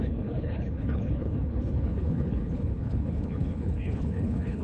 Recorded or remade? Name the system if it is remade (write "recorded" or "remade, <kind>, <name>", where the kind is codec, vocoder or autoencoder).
remade, codec, HILCodec